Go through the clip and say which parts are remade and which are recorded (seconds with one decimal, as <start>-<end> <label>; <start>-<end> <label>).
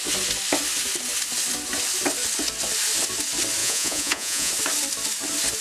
0.0-3.6 recorded; 3.6-4.5 remade; 4.5-5.6 recorded